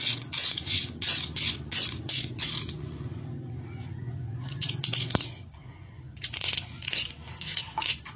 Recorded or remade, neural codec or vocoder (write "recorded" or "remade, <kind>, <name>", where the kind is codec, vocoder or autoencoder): remade, vocoder, Vocos